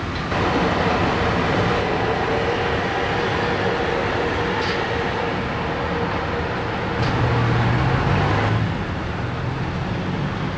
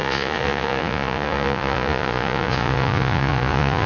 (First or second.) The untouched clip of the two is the first